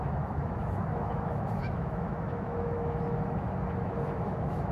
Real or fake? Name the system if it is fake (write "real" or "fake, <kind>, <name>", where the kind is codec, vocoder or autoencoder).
fake, autoencoder, DAC-VAE